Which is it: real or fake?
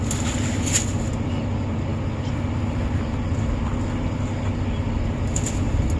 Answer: real